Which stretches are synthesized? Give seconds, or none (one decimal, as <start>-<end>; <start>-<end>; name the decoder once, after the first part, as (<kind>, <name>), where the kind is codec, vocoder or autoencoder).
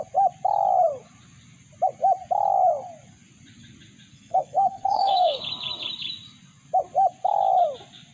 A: 4.1-5.4 (codec, SNAC)